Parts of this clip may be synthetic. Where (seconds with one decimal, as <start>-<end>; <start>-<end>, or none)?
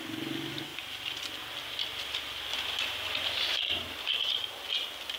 0.7-1.4; 2.5-3.6